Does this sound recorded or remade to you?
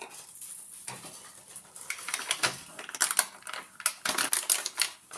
recorded